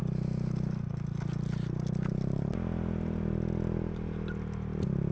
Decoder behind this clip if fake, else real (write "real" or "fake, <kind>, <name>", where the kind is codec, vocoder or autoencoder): real